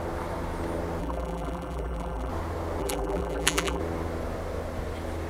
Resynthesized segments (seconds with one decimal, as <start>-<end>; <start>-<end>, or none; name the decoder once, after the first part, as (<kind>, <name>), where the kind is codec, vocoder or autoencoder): 1.0-2.3 (vocoder, BigVGAN v2); 2.8-3.8